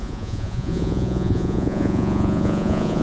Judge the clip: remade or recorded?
remade